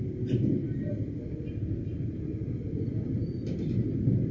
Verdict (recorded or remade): recorded